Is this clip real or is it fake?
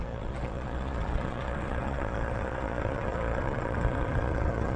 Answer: fake